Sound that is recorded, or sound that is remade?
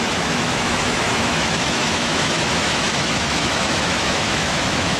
remade